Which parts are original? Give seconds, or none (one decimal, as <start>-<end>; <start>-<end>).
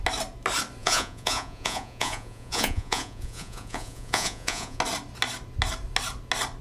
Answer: 0.0-0.8; 4.8-6.6